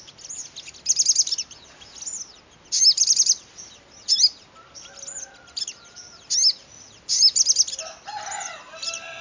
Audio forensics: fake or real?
real